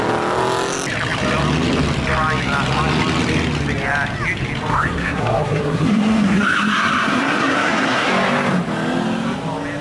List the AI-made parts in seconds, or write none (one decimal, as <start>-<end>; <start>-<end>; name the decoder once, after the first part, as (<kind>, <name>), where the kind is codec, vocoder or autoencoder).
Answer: 4.7-8.1 (codec, SNAC)